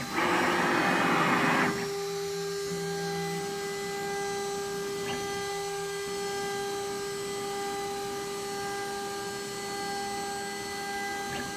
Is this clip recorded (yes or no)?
yes